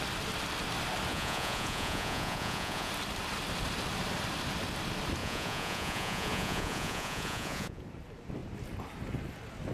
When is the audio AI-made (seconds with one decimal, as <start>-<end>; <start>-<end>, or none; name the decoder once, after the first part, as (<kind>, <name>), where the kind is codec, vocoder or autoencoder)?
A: 1.1-2.9 (vocoder, Vocos); 5.2-7.8